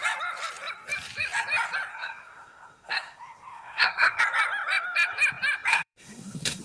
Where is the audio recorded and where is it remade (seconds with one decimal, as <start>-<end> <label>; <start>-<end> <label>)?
0.0-1.9 recorded; 1.9-4.2 remade; 4.2-5.7 recorded; 5.7-6.6 remade